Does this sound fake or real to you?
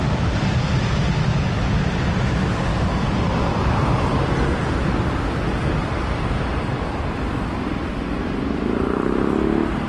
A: real